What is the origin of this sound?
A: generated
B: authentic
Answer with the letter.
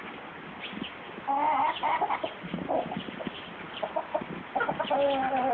B